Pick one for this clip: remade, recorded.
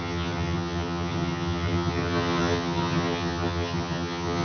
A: remade